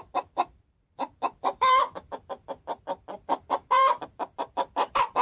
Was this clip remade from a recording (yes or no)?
yes